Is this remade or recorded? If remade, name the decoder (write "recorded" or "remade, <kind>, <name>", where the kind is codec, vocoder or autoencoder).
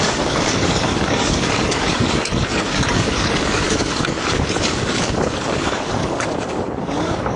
remade, codec, DAC